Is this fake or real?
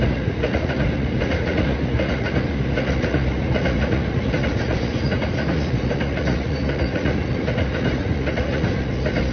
fake